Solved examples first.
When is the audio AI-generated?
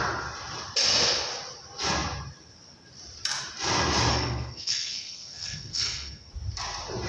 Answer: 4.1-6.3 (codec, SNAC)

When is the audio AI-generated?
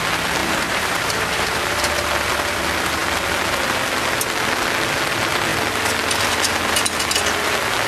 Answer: 0.4-1.9 (vocoder, BigVGAN v2)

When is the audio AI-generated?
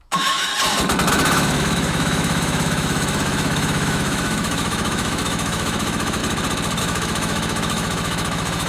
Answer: 0.0-0.5 (autoencoder, DAC-VAE); 1.1-6.2; 6.8-8.7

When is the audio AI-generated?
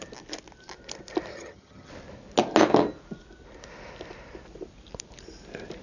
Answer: 1.3-1.9 (vocoder, HiFi-GAN)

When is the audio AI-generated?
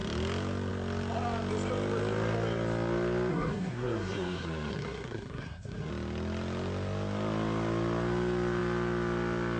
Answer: 3.3-5.9 (codec, SNAC)